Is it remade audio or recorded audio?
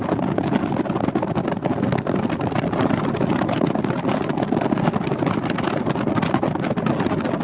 recorded